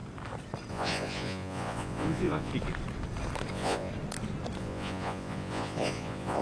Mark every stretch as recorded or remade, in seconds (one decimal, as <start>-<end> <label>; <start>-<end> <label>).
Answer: 0.0-0.7 recorded; 0.7-2.5 remade; 2.5-3.5 recorded; 3.5-3.9 remade; 3.9-4.6 recorded; 4.6-6.4 remade